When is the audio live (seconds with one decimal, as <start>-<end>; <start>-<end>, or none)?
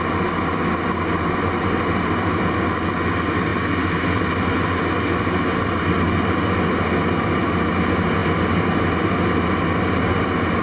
0.0-10.6